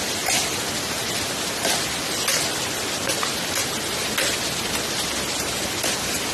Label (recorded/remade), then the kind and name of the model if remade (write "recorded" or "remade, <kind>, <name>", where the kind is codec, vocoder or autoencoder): recorded